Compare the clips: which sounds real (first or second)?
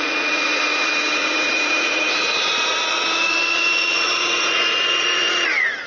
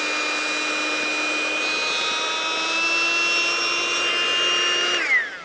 second